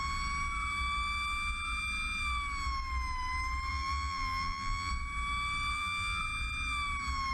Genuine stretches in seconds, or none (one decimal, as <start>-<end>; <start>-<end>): 0.0-3.7; 4.9-5.7; 6.2-7.3